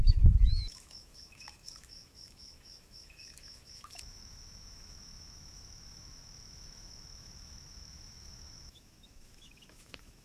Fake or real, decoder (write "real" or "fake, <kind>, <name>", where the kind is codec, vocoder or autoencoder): fake, autoencoder, DAC-VAE